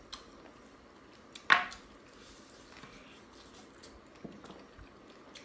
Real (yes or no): yes